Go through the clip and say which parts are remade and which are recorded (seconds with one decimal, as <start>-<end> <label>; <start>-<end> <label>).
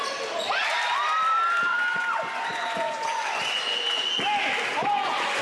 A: 0.0-1.7 recorded; 1.7-4.1 remade; 4.1-4.8 recorded; 4.8-5.4 remade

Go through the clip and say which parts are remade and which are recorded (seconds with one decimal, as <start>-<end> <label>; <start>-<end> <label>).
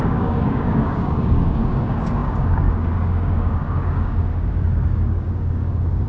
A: 0.0-6.1 remade